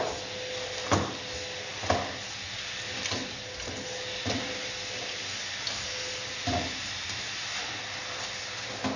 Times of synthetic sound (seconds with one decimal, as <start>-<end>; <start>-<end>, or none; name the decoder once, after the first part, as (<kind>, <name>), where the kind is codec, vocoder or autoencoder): none